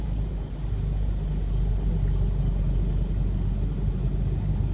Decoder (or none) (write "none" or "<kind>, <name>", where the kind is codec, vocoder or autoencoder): none